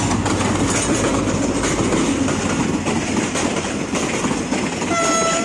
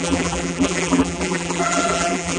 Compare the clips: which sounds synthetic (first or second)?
second